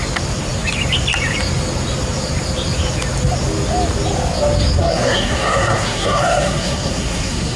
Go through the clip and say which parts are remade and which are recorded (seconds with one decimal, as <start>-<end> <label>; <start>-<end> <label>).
0.0-4.8 recorded; 4.8-7.6 remade